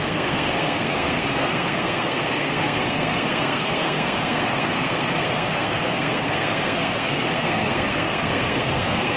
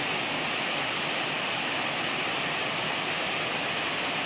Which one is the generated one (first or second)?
first